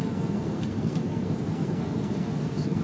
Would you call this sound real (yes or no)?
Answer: no